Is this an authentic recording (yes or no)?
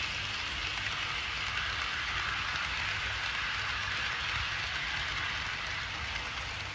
yes